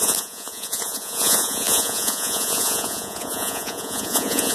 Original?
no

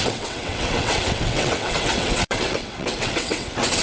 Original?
no